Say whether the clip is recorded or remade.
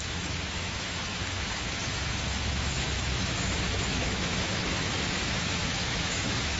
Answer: remade